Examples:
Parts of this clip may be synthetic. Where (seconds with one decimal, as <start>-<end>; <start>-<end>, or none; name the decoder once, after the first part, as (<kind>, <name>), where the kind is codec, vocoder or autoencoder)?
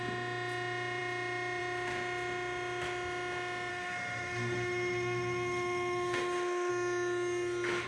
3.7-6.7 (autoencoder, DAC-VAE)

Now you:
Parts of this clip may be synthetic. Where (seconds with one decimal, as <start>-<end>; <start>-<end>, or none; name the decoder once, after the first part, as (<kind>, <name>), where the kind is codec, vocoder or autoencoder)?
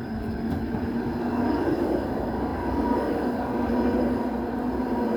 0.0-3.7 (codec, DAC)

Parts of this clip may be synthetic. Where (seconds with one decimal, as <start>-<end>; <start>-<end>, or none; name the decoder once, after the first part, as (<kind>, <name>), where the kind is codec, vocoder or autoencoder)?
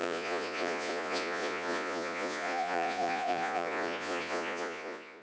0.0-5.2 (vocoder, Vocos)